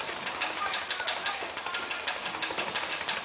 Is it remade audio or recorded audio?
recorded